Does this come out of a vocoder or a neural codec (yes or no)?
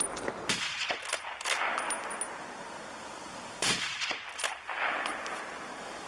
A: no